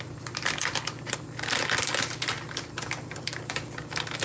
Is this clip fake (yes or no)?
no